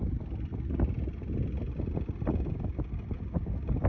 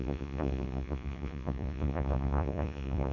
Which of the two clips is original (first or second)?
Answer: first